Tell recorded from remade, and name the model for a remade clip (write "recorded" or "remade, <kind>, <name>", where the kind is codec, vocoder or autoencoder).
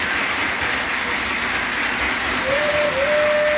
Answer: recorded